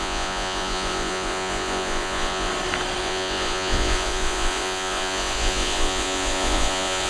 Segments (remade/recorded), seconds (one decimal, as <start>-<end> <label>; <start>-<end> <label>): 0.0-2.5 remade; 2.5-3.0 recorded; 3.0-7.1 remade